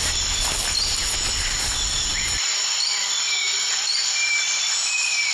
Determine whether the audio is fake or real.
real